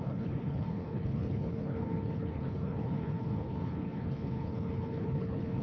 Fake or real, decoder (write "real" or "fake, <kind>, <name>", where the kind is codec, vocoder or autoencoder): fake, codec, HILCodec